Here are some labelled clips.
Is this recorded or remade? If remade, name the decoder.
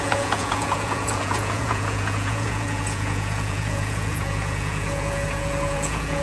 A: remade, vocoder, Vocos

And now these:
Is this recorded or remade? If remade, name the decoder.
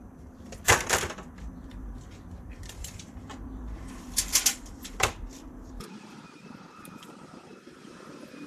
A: remade, vocoder, BigVGAN v2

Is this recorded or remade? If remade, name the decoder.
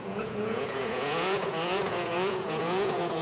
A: remade, vocoder, Vocos